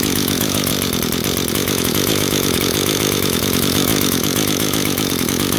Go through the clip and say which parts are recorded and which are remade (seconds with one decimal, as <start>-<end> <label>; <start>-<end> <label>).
0.0-0.7 remade; 0.7-1.5 recorded; 1.5-5.6 remade